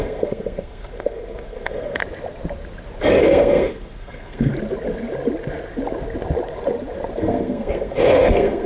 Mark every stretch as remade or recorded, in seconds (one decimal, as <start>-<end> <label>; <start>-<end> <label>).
0.0-2.0 remade; 2.0-3.2 recorded; 3.2-4.5 remade; 4.5-7.2 recorded; 7.2-8.7 remade